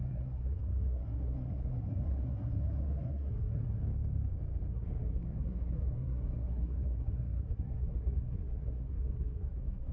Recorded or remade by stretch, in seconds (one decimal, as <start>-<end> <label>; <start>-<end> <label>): 0.0-3.8 remade; 3.8-4.7 recorded; 4.7-9.9 remade